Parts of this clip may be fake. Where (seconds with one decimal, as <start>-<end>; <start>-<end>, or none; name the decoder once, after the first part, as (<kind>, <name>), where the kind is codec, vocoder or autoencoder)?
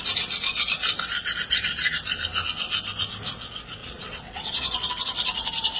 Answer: 3.8-4.9 (vocoder, Vocos)